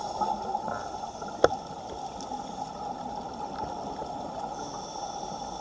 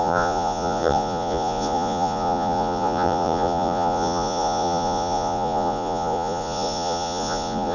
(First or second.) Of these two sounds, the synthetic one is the second